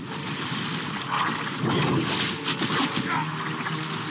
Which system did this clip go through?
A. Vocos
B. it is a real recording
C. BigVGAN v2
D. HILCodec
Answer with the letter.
B